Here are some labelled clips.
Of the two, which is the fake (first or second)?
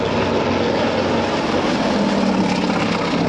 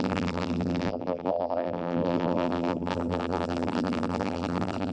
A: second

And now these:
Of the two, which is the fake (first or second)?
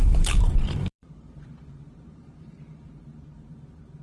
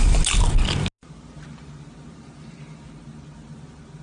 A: first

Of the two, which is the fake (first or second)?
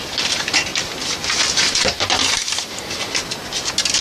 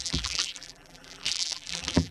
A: second